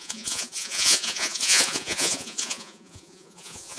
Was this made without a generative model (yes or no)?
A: no